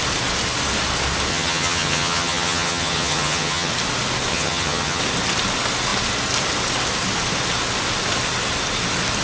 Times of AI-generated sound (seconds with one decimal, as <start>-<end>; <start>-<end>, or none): 1.3-3.7; 4.3-5.0